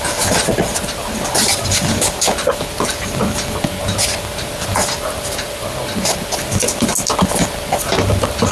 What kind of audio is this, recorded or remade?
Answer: recorded